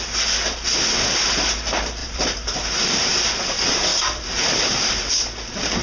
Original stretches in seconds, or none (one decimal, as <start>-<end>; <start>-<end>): 0.0-2.0; 3.1-3.9; 5.1-5.8